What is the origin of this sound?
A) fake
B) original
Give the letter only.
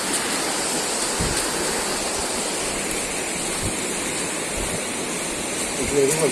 B